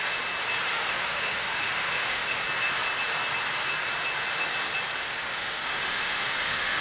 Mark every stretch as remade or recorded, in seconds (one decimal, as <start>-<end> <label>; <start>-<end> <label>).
0.0-0.7 recorded; 0.7-2.4 remade; 2.4-5.0 recorded; 5.0-6.8 remade